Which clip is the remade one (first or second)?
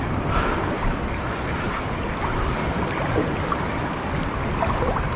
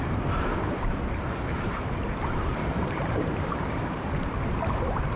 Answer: second